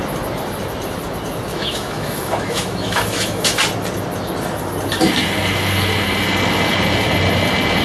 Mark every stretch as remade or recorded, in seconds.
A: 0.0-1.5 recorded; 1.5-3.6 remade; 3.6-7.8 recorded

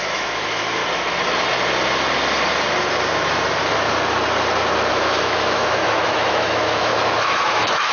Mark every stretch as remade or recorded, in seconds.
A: 0.0-0.8 remade; 0.8-4.9 recorded; 4.9-7.9 remade

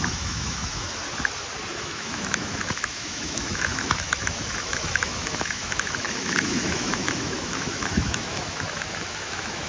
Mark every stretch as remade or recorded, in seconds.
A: 0.0-1.0 remade; 1.0-1.7 recorded; 1.7-9.7 remade

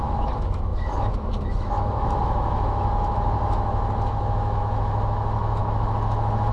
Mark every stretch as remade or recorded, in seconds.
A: 0.0-6.5 remade

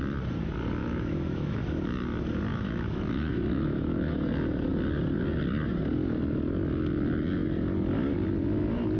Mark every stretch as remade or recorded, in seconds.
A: 0.0-0.8 recorded; 0.8-1.8 remade; 1.8-2.5 recorded; 2.5-4.1 remade; 4.1-9.0 recorded

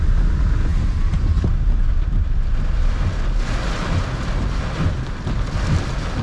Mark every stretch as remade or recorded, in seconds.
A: 0.0-6.2 recorded

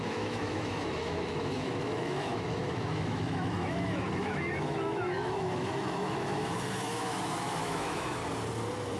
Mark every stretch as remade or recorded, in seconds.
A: 0.0-8.2 remade; 8.2-9.0 recorded

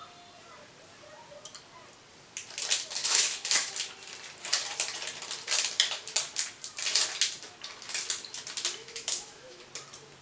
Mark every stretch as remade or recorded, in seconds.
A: 0.0-3.0 recorded; 3.0-3.7 remade; 3.7-8.8 recorded; 8.8-9.6 remade; 9.6-10.2 recorded